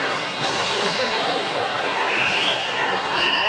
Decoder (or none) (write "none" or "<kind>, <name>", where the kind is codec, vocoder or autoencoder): codec, SNAC